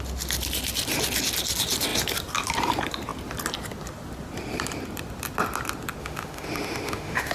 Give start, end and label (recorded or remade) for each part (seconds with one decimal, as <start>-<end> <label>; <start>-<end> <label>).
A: 0.0-6.0 recorded; 6.0-7.3 remade